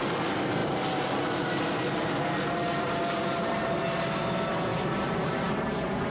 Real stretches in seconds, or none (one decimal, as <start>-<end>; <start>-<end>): 0.0-0.6; 1.6-2.7; 3.8-4.7; 5.6-6.1